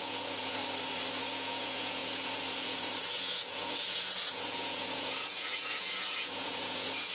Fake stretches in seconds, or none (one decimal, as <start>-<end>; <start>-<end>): 0.0-0.6; 1.2-7.1

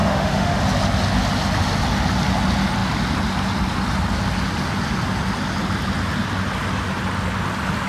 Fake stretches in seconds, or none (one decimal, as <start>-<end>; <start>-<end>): 0.0-0.6

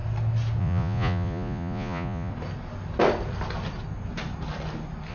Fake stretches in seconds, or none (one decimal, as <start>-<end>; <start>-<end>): 0.6-2.3

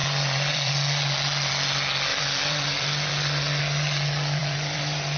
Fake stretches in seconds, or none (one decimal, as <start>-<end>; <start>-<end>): 0.0-0.7; 2.1-3.6; 4.4-5.2

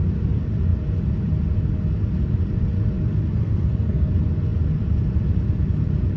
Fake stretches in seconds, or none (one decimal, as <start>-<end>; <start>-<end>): 3.3-4.1

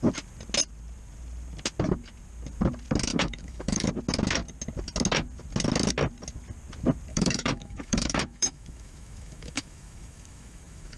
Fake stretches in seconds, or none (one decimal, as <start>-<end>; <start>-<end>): 3.1-3.9; 7.1-11.0

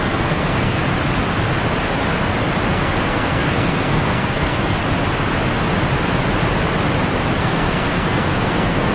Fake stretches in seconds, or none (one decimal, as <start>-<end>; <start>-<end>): 0.0-0.8; 2.7-4.8; 7.4-8.9